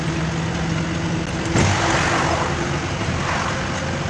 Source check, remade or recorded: recorded